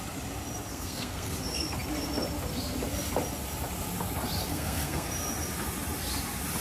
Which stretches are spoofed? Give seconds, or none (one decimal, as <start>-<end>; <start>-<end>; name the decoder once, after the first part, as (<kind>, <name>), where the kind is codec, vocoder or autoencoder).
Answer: 0.7-1.3 (codec, SNAC); 4.4-5.1